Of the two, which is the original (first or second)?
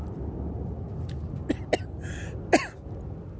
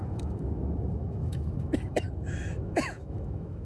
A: first